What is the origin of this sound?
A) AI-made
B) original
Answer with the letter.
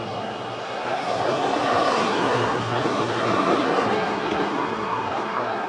A